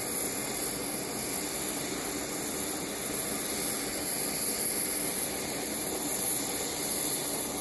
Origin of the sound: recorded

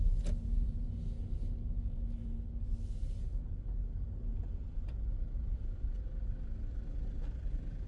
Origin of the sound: recorded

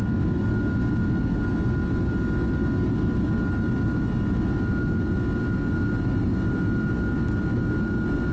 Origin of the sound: recorded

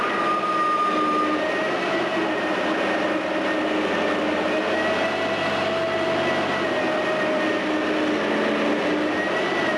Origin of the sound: recorded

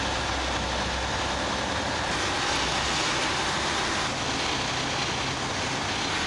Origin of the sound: recorded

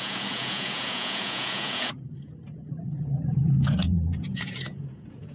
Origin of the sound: remade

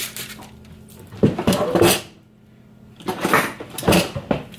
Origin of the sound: recorded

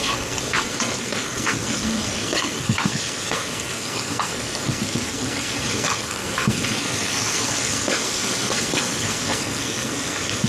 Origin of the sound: remade